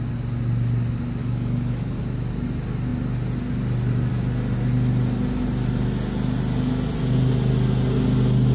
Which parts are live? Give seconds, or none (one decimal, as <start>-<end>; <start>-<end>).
0.0-1.2; 2.0-8.5